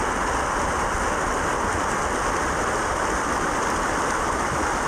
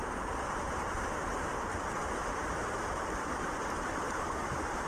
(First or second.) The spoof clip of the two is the second